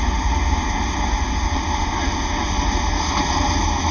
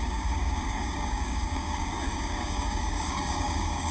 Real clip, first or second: first